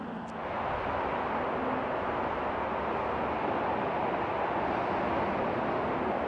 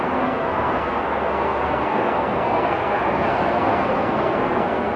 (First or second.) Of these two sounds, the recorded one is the first